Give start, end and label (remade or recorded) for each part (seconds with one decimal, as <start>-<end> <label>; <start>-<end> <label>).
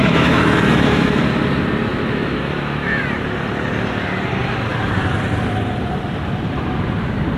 0.0-1.2 remade; 1.2-1.9 recorded; 1.9-3.0 remade; 3.0-7.4 recorded